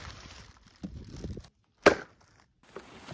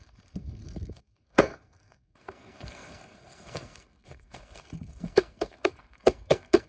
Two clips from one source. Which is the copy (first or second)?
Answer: second